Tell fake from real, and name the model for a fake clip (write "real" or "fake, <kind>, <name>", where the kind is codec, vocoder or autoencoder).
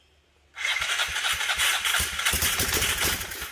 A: real